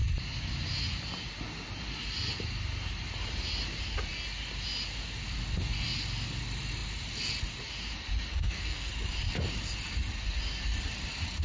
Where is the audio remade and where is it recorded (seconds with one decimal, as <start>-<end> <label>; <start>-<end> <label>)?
0.0-8.3 recorded; 8.3-8.9 remade; 8.9-11.4 recorded